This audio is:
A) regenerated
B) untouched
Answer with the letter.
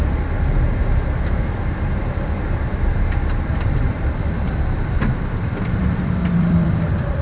A